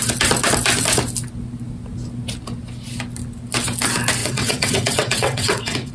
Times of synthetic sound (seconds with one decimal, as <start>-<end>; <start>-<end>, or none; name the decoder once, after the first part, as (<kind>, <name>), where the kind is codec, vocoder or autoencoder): 4.2-5.9 (vocoder, WaveNeXt)